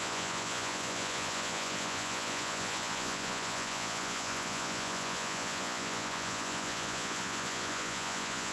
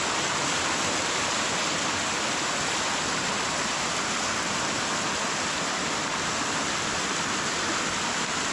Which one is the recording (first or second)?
second